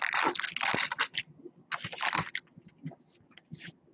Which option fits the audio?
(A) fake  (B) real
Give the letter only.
B